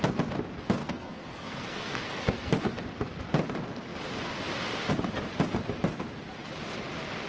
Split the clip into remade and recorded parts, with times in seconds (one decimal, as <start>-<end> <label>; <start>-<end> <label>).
0.0-0.8 recorded; 0.8-2.6 remade; 2.6-7.3 recorded